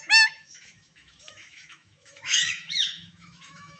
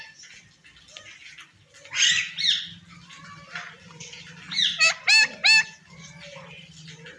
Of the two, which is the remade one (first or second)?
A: first